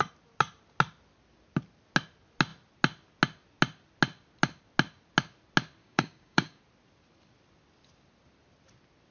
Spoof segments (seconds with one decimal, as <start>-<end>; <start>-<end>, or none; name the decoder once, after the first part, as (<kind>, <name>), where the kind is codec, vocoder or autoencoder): 5.8-6.6 (codec, DAC)